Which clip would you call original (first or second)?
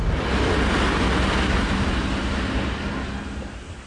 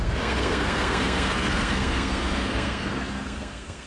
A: first